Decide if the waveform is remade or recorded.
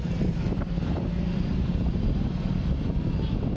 recorded